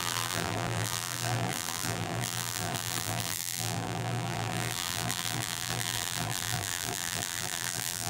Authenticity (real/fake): fake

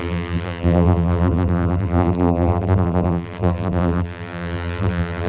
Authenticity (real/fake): fake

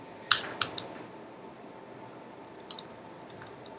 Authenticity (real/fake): real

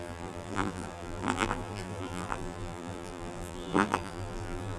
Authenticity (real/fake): fake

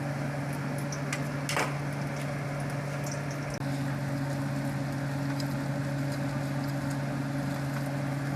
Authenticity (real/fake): real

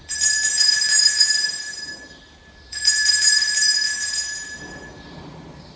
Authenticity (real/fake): fake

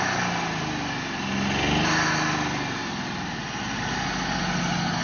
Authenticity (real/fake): real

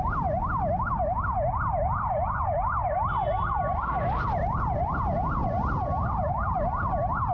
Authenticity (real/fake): real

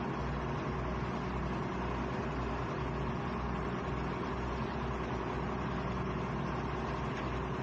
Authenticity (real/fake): real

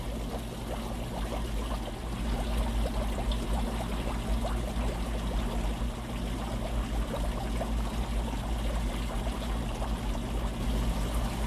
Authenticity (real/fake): real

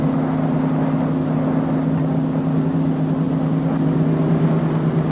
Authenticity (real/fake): real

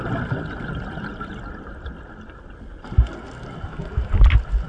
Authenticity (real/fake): real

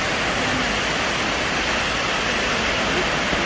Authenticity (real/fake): real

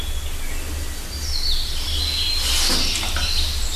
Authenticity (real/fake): real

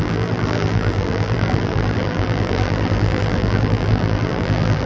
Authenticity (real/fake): fake